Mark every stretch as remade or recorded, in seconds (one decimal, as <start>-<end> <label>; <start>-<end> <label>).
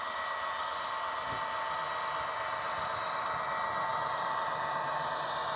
0.0-3.9 recorded; 3.9-5.1 remade; 5.1-5.6 recorded